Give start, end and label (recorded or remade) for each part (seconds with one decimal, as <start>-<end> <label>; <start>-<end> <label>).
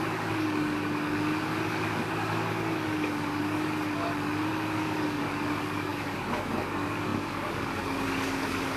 0.0-8.8 remade